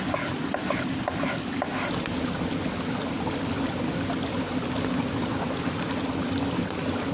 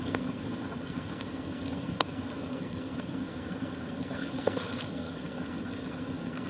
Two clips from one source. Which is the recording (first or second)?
first